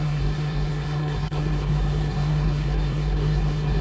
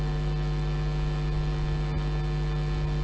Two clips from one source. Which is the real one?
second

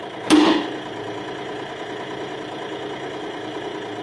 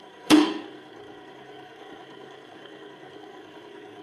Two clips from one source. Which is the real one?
first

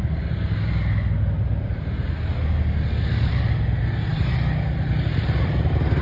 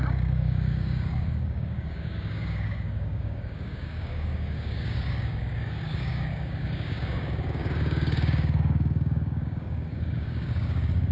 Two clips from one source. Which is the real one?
first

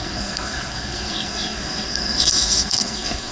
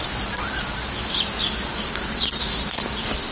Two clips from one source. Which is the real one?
second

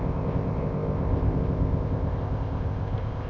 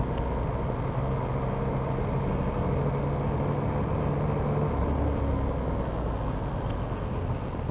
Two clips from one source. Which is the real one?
second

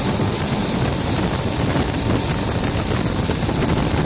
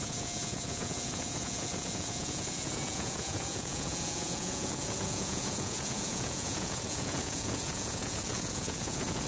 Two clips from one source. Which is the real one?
first